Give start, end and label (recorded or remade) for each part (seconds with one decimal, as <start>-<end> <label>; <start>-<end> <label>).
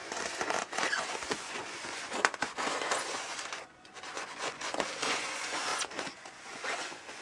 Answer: 0.0-7.2 remade